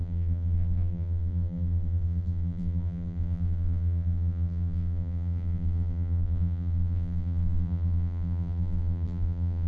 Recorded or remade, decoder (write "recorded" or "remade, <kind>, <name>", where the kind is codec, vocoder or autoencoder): remade, vocoder, BigVGAN v2